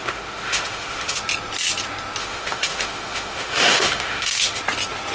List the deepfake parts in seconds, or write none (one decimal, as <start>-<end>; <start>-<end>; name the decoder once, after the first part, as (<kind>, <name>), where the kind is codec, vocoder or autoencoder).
0.0-1.2 (autoencoder, DAC-VAE); 2.2-4.6